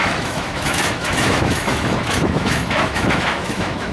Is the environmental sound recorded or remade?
remade